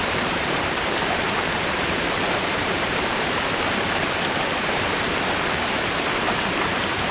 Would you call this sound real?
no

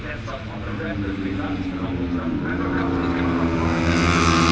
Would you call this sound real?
yes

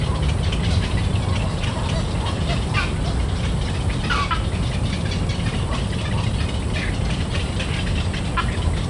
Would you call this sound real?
yes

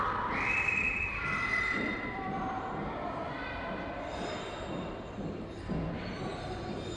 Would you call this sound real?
no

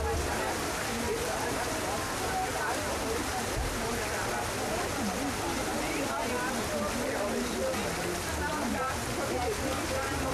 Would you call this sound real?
yes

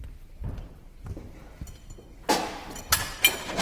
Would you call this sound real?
yes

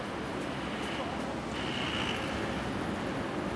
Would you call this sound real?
yes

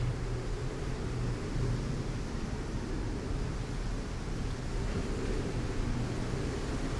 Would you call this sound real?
yes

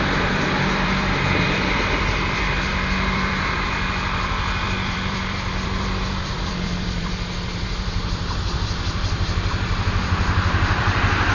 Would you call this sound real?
no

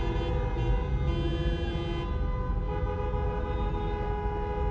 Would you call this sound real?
yes